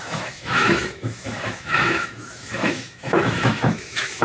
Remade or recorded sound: remade